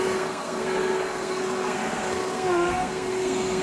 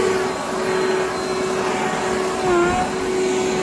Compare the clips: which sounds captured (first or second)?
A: second